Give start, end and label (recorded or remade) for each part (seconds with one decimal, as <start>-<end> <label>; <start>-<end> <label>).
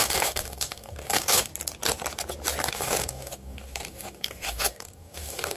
0.0-1.5 remade; 1.5-2.7 recorded; 2.7-5.6 remade